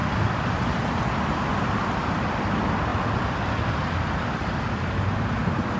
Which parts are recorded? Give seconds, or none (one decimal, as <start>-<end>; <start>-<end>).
0.8-2.9; 4.9-5.8